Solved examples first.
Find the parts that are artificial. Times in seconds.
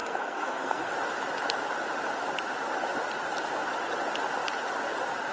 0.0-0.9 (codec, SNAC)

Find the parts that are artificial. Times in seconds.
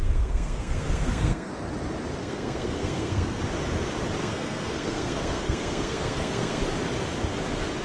0.0-1.5 (codec, SNAC); 2.2-3.4; 4.2-6.6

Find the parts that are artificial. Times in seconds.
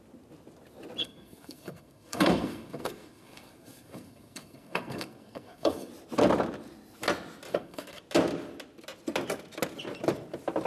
1.0-5.9 (codec, SNAC); 7.5-8.0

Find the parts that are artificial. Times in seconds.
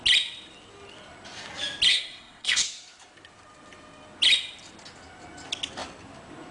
1.9-2.6 (codec, SNAC)